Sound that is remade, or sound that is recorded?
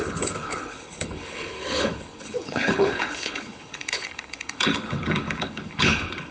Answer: remade